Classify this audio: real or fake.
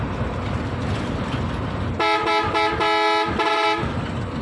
real